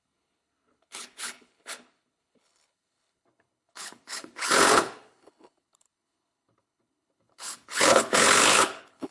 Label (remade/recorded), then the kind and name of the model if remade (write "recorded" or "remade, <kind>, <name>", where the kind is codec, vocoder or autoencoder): remade, codec, HILCodec